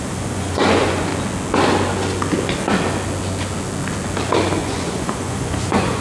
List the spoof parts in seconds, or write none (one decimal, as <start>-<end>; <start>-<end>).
0.0-1.1; 4.6-6.0